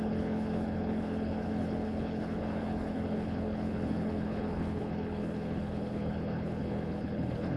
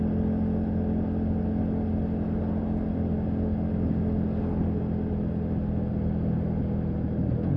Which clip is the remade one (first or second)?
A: first